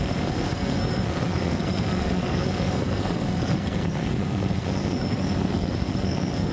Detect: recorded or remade remade